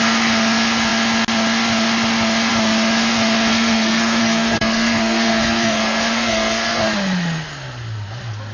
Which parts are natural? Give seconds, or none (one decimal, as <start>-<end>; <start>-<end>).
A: 0.0-3.5; 6.8-8.5